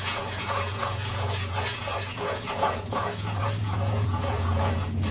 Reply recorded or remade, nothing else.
remade